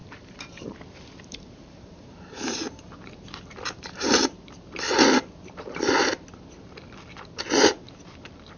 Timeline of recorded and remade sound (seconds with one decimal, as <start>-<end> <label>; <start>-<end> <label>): 0.0-4.7 remade; 4.7-8.6 recorded